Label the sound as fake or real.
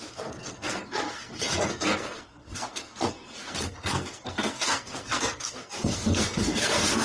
fake